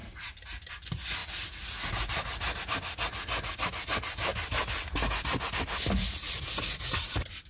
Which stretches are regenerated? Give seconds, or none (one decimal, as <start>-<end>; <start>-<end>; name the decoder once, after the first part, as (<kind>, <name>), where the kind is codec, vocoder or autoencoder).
none